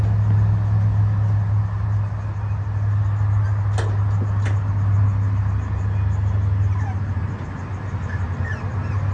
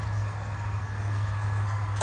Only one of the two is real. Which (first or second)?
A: first